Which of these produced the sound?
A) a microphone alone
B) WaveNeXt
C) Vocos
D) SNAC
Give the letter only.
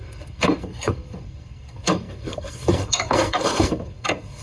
D